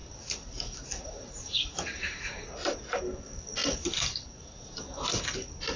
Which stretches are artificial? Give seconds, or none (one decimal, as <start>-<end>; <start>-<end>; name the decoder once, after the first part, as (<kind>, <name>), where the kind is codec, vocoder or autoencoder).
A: 0.0-3.0 (vocoder, BigVGAN v2); 3.6-4.8